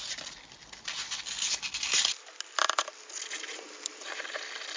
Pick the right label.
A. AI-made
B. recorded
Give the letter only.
B